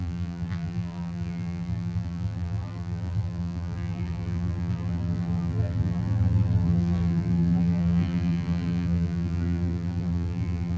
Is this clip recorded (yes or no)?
no